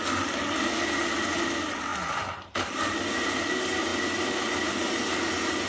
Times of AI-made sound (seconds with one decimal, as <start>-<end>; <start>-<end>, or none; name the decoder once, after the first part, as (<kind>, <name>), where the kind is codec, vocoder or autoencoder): none